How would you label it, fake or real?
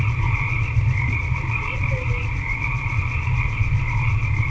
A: real